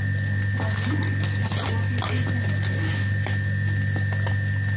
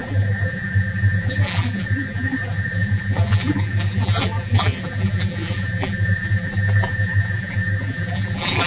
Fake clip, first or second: second